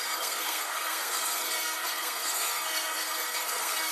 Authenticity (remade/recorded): remade